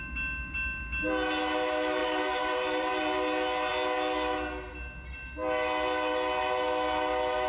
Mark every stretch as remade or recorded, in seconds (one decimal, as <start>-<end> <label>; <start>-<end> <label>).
0.0-2.0 recorded; 2.0-3.0 remade; 3.0-7.5 recorded